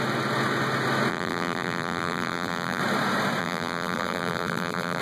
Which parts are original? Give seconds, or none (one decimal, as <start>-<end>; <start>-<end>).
0.0-1.1; 2.8-3.4